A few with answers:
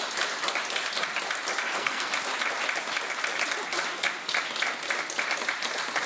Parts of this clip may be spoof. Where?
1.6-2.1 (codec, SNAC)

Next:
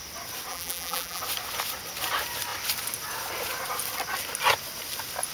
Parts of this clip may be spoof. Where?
0.5-1.2 (vocoder, BigVGAN v2)

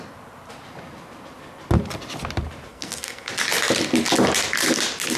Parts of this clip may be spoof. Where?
2.7-3.3 (codec, SNAC)

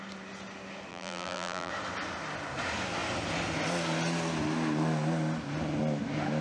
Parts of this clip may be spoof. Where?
0.9-1.7 (vocoder, BigVGAN v2)

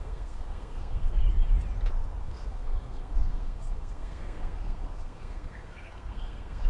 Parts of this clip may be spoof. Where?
0.0-1.2 (codec, SNAC); 2.2-6.7

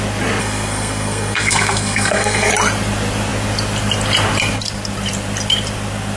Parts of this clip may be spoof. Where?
0.4-2.5 (codec, SNAC)

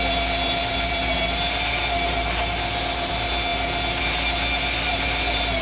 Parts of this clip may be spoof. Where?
none